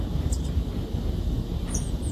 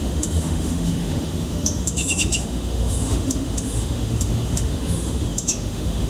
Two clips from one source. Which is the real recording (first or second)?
first